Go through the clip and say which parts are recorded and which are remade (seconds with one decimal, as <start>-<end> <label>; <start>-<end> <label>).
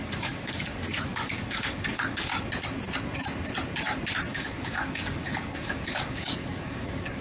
0.0-2.3 remade; 2.3-4.2 recorded; 4.2-7.2 remade